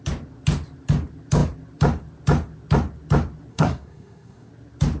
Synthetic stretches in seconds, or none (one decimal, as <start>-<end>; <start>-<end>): 3.5-4.5